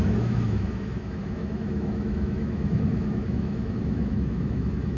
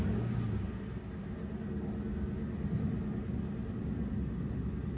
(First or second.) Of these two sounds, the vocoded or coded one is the first